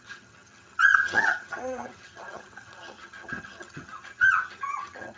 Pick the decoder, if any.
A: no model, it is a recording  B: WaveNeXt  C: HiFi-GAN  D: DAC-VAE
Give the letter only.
C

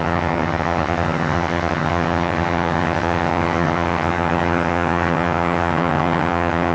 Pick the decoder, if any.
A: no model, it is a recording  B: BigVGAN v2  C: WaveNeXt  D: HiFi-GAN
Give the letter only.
D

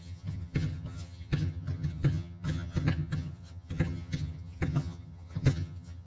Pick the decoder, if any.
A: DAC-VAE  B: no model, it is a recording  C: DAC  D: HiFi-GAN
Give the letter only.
D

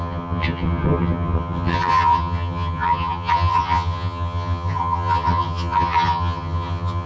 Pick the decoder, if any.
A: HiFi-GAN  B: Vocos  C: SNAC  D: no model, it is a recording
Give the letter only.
A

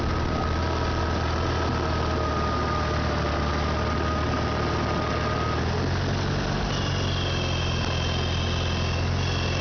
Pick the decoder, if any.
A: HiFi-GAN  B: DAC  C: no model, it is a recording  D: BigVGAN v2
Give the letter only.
C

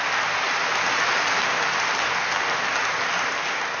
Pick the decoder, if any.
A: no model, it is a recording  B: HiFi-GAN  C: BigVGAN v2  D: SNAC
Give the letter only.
A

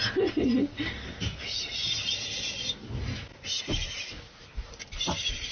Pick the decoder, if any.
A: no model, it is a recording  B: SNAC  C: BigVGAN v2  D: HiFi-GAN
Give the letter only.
A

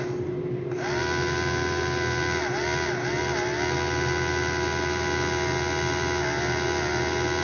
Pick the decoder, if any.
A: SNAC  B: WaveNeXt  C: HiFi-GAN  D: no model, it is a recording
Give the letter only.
D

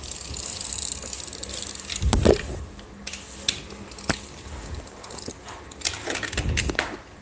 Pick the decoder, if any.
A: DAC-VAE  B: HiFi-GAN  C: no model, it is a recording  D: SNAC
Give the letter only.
C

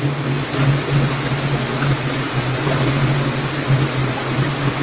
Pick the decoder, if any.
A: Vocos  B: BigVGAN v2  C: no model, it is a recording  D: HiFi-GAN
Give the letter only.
C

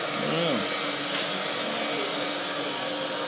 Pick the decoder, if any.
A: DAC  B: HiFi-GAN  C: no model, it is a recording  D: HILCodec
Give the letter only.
C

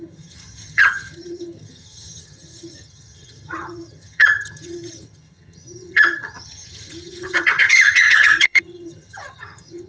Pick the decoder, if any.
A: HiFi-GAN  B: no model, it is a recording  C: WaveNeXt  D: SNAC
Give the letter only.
A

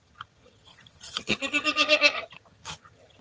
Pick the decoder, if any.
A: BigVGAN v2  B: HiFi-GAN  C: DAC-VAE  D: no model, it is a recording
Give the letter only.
B